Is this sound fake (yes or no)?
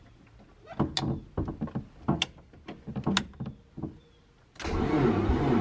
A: no